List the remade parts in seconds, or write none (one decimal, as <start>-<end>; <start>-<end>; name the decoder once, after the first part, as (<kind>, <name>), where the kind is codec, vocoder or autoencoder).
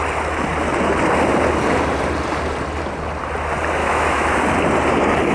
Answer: 3.8-4.3 (autoencoder, DAC-VAE)